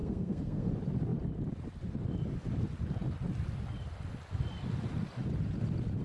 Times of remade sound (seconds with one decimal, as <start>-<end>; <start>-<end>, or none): 0.0-0.7